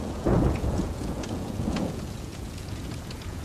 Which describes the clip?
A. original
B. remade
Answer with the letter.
B